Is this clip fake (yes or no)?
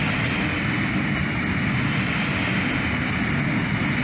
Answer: no